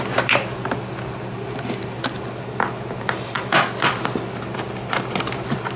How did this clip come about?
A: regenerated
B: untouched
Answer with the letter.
B